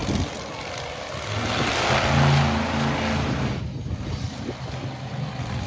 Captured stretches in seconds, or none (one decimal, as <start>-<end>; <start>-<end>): 0.0-5.7